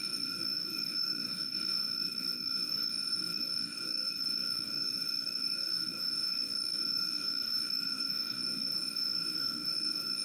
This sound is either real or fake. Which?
fake